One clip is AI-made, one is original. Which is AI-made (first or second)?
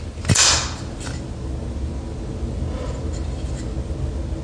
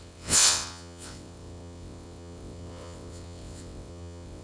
second